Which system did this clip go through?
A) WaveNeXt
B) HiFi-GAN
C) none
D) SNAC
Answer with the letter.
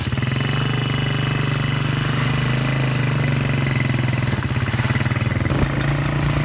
C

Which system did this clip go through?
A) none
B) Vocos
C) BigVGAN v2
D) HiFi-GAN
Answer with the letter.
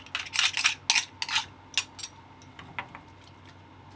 A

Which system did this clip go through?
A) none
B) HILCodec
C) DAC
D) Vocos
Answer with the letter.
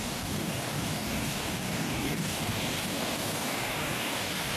C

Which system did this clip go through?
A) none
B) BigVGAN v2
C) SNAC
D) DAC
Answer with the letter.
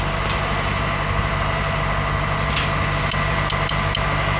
A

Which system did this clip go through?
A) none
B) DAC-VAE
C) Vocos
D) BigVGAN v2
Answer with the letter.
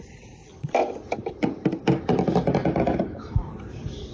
D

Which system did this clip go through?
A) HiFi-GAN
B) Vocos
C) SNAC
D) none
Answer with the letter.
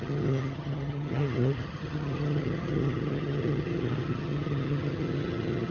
A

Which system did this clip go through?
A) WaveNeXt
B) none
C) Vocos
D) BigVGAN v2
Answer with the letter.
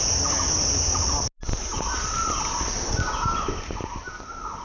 B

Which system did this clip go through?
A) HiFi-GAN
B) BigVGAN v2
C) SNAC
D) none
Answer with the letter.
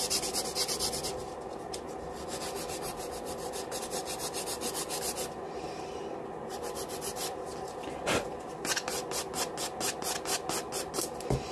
D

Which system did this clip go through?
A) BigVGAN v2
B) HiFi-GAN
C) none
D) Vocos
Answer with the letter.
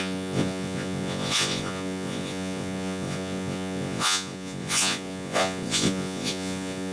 D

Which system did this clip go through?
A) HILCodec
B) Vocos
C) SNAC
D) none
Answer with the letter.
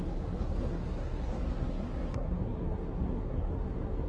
C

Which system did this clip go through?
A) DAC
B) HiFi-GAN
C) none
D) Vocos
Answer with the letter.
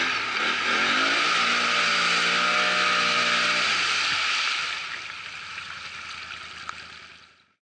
C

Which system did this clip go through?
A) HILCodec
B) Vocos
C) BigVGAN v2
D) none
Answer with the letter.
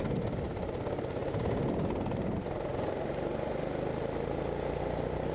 D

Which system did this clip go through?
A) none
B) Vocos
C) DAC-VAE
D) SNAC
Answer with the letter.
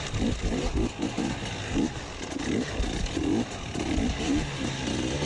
A